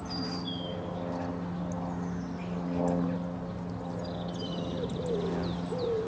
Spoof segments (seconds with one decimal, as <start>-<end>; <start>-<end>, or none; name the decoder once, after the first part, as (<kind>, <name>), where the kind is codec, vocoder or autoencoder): none